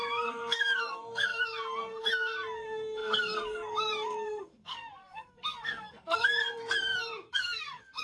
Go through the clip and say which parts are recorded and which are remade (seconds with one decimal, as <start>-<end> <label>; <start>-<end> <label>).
0.0-8.0 remade